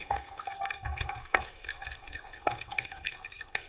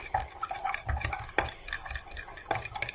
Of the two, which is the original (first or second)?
second